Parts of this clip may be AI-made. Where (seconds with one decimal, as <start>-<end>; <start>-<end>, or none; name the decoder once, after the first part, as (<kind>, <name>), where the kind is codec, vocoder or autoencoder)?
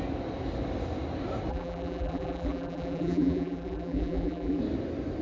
1.5-4.6 (vocoder, BigVGAN v2)